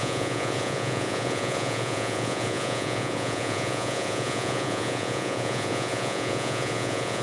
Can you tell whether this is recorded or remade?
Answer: remade